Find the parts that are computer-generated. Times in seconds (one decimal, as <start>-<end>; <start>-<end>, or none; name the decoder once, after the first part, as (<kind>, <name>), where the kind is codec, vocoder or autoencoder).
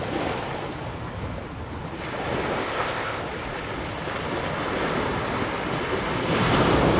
2.6-3.2 (codec, ZipCodec)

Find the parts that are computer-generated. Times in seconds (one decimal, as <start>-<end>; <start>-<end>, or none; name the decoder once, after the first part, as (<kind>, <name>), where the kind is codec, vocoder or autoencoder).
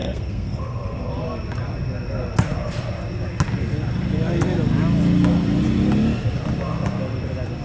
0.0-1.1 (codec, SNAC)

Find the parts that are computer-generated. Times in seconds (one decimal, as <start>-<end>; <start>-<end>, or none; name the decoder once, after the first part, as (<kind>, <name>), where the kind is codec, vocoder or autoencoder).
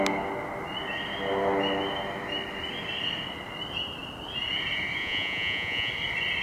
5.0-5.9 (vocoder, Vocos)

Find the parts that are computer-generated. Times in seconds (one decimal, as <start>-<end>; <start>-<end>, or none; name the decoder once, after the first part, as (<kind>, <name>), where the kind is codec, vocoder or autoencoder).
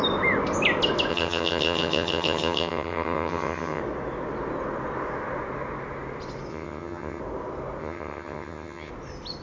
1.1-3.8 (vocoder, HiFi-GAN); 6.5-7.2; 7.8-8.9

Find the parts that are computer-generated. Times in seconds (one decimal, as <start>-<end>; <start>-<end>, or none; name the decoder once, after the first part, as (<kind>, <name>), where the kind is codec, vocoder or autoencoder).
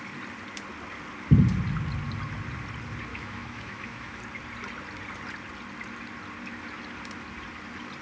3.1-4.2 (autoencoder, DAC-VAE)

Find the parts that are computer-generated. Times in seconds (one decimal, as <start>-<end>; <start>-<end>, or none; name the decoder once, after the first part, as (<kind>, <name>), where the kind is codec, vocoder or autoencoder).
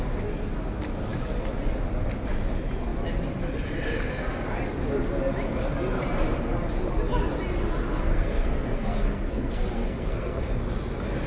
7.8-10.4 (codec, SNAC)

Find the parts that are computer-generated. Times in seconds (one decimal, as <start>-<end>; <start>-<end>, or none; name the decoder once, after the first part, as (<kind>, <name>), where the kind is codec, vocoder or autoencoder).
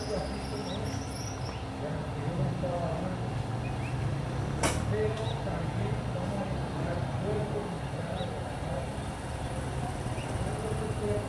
none